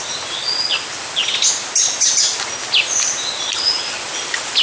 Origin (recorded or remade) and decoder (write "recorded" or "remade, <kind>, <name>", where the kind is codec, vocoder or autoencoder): recorded